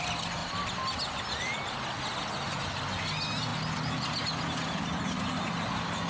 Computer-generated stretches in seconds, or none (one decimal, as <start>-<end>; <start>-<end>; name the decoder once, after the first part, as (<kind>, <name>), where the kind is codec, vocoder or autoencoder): none